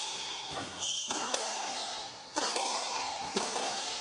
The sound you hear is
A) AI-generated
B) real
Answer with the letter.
A